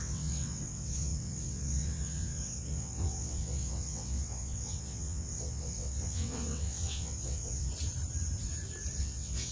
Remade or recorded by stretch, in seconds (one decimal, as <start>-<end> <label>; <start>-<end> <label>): 0.0-7.7 remade; 7.7-9.0 recorded; 9.0-9.5 remade